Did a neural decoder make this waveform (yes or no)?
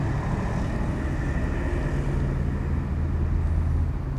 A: no